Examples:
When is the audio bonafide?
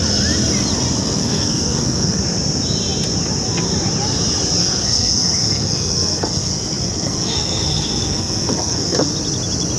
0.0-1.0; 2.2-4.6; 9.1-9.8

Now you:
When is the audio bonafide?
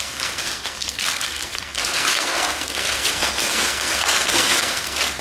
none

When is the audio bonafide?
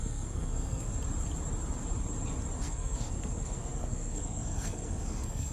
0.9-2.6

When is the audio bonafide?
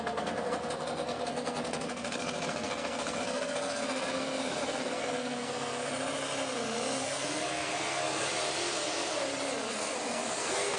5.9-7.0; 8.3-9.7